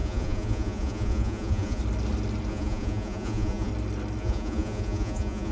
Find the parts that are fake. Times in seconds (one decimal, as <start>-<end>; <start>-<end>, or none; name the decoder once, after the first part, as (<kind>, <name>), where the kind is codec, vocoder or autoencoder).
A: 0.0-1.8 (vocoder, Vocos); 2.5-3.7; 4.2-5.5